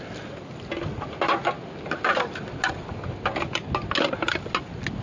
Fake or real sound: real